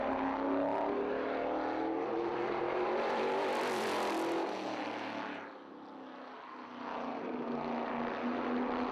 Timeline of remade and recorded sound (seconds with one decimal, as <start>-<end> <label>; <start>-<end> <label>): 0.0-2.3 recorded; 2.3-4.4 remade; 4.4-8.9 recorded